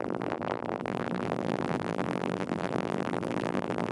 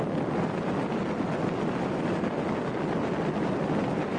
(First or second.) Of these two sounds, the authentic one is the second